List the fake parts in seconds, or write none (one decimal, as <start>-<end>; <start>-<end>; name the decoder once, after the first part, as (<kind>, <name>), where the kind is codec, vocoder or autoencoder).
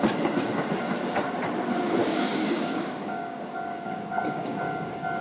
2.0-5.2 (codec, DAC)